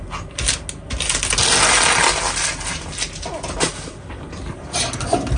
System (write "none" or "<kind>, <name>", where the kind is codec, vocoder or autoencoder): none